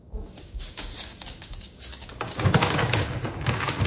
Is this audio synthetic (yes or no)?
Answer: yes